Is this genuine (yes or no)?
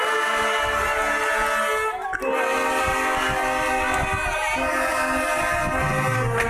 yes